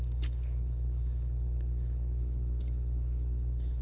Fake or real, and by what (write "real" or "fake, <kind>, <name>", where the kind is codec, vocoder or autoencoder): fake, codec, HILCodec